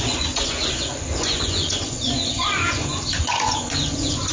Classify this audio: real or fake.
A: fake